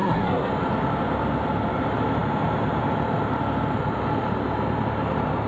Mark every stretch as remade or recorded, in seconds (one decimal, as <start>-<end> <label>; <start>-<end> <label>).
0.0-0.5 remade; 0.5-5.5 recorded